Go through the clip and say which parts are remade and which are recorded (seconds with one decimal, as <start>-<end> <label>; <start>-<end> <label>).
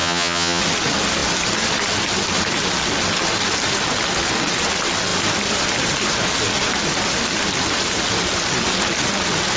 0.0-0.6 remade; 0.6-9.6 recorded